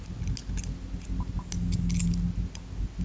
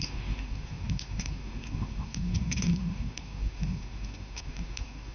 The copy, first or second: second